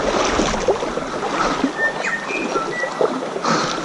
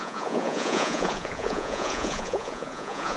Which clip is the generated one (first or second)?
second